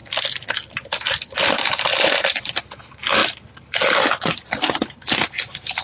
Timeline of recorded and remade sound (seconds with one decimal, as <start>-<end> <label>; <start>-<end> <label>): 0.0-5.8 recorded